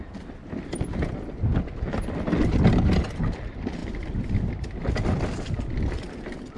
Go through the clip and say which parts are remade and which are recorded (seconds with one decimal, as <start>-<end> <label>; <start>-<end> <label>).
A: 0.0-6.6 recorded